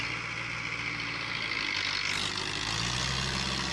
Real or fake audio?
real